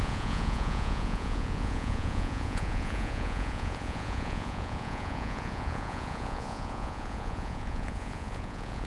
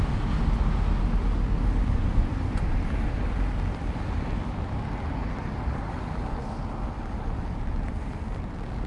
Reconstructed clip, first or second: first